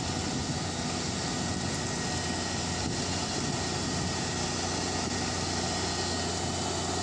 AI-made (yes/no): no